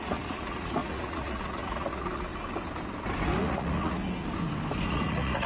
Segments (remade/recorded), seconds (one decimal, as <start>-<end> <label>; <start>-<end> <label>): 0.0-2.3 remade; 2.3-3.4 recorded; 3.4-4.0 remade; 4.0-4.9 recorded; 4.9-5.5 remade